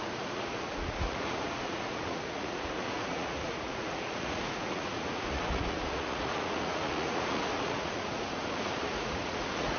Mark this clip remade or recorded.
remade